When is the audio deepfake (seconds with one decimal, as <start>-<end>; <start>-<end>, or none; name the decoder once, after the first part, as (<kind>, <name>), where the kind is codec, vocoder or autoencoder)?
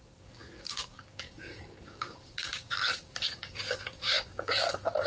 0.0-5.1 (codec, DAC)